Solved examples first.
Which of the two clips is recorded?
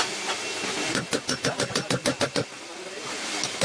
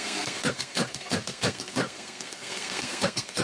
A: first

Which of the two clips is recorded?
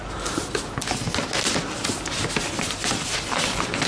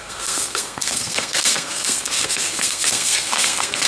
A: first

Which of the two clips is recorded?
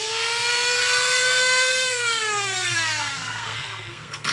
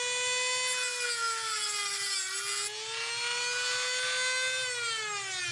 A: second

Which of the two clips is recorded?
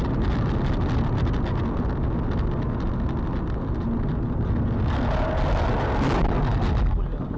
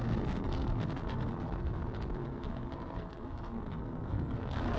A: first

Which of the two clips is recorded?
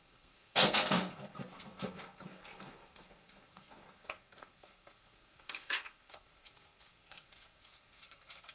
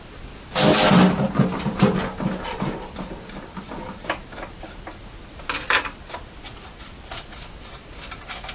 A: second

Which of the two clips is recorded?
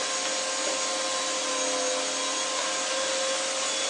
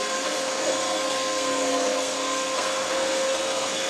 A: first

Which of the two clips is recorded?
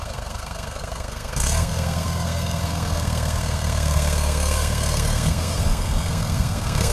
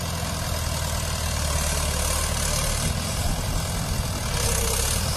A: second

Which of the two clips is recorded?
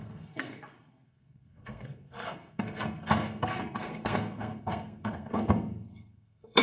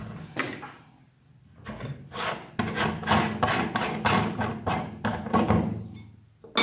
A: second